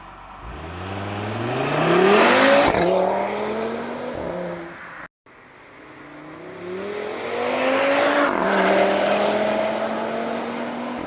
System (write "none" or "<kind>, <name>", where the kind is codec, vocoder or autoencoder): none